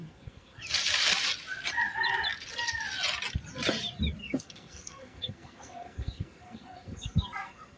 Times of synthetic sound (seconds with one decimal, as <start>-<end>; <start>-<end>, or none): 0.0-0.6; 4.2-7.8